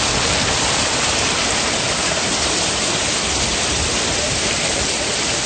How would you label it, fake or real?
real